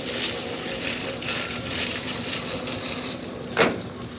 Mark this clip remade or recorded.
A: remade